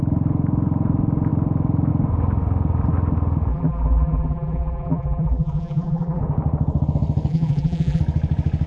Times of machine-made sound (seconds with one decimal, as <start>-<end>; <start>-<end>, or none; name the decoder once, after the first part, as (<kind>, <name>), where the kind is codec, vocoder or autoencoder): 3.5-6.2 (vocoder, BigVGAN v2); 7.3-8.0